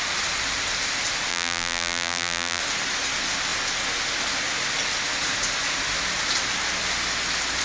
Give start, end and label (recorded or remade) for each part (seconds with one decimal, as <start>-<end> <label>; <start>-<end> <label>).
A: 0.0-1.3 recorded; 1.3-2.6 remade; 2.6-7.6 recorded